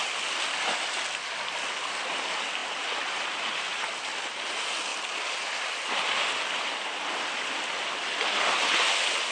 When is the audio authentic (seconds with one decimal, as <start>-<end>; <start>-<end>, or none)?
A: 0.0-9.3